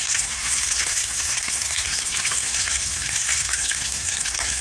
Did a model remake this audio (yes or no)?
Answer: yes